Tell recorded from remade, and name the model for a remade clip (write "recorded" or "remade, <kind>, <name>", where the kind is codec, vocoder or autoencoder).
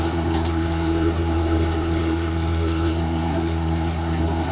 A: remade, codec, SNAC